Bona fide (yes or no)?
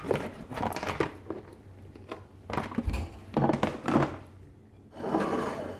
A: yes